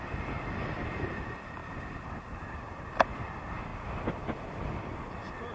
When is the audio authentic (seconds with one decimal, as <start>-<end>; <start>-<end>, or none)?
0.0-5.5